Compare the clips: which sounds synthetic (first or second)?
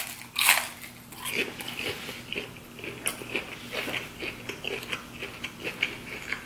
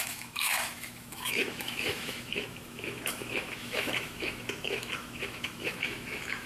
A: second